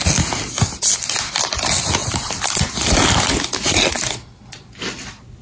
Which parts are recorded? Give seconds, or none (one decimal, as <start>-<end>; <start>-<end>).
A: 0.0-5.4

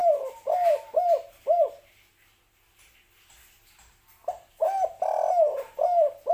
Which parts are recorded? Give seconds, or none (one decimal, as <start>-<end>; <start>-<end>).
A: 0.0-6.3

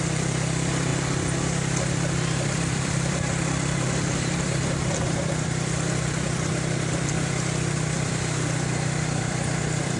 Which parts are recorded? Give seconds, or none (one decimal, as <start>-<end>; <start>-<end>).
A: 0.9-1.9

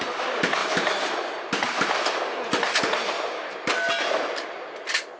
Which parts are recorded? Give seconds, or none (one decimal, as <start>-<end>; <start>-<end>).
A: 0.0-0.6; 3.7-5.2